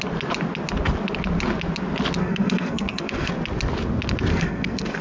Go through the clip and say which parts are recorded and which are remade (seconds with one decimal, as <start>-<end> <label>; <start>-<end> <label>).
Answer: 0.0-2.2 recorded; 2.2-3.3 remade; 3.3-4.3 recorded; 4.3-5.0 remade